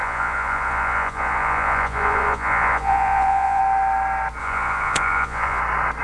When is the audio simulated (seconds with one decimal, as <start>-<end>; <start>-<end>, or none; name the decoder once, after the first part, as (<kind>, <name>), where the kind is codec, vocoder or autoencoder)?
0.0-3.6 (vocoder, Vocos); 4.4-5.6